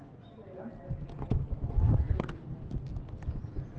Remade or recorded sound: recorded